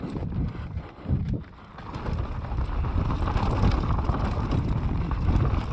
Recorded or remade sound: recorded